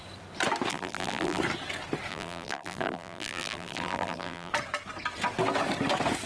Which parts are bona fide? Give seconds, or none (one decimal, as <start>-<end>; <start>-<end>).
0.0-0.7; 1.4-2.1; 4.5-6.3